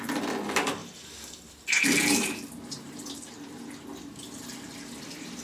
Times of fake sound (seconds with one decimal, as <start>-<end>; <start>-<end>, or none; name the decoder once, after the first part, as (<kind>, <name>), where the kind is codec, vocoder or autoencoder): 0.8-3.7 (vocoder, BigVGAN v2)

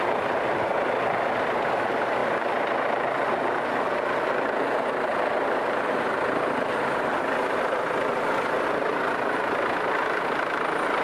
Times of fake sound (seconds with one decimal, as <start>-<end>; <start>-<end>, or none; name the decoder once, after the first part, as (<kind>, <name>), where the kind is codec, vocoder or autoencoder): none

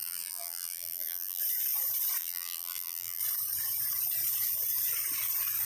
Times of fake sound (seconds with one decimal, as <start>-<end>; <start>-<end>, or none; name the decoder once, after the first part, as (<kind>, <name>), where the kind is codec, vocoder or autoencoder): 0.0-1.4 (vocoder, BigVGAN v2); 2.2-3.2